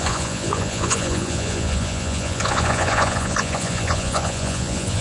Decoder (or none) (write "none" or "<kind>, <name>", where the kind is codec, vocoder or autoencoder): vocoder, Vocos